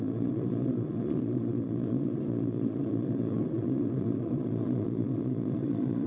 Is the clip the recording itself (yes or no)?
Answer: no